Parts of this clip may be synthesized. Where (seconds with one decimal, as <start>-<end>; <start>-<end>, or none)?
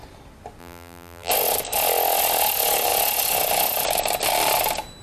0.6-1.3